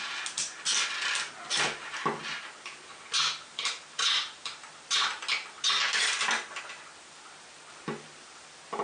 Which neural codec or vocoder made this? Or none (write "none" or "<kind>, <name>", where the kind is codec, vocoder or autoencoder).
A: none